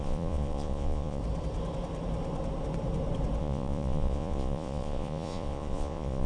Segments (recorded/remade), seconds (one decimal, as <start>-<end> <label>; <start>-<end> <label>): 0.0-1.2 remade; 1.2-3.4 recorded; 3.4-6.3 remade